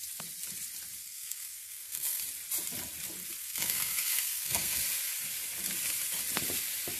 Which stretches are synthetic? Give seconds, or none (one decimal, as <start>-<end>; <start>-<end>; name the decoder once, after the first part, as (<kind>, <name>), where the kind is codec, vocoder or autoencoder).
1.0-2.2 (codec, SNAC); 3.4-4.8